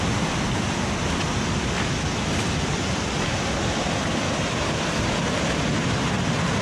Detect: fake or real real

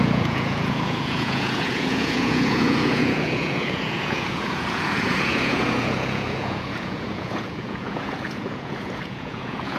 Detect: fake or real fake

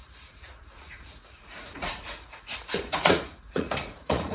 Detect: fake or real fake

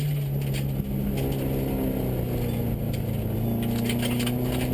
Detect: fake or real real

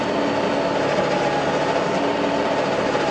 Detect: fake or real real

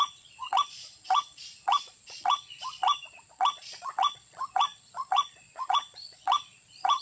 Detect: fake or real fake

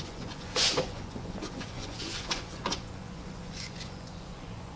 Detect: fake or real fake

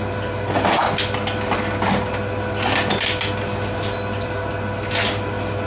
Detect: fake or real real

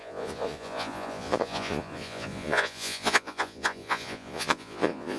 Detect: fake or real fake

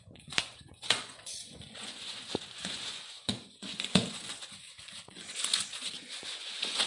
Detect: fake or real fake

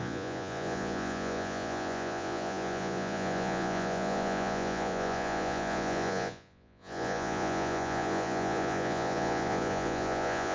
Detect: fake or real fake